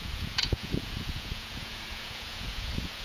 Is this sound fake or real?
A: fake